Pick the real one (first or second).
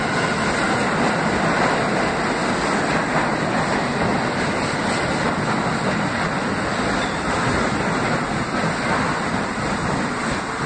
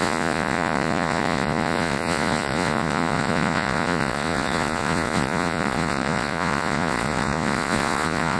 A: first